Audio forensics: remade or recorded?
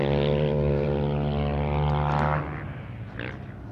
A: recorded